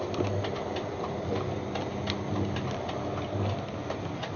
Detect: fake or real real